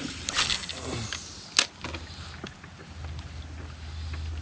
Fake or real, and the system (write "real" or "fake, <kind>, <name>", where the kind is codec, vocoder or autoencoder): real